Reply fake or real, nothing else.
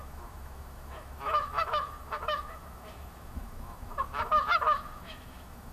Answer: fake